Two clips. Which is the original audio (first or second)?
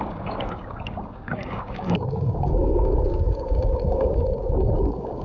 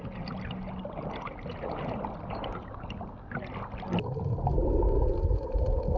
second